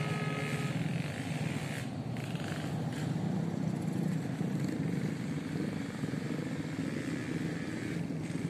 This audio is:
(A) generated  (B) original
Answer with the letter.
B